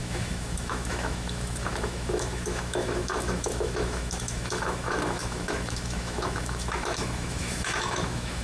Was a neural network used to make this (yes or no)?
yes